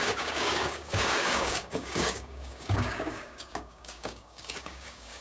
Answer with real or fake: fake